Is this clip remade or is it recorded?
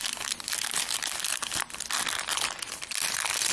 remade